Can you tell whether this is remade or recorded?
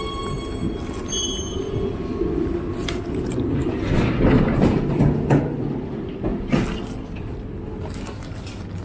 recorded